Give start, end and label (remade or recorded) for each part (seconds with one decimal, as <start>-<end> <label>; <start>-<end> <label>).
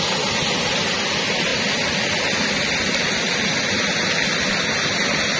0.0-5.4 recorded